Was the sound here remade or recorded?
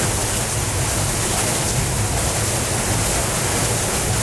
recorded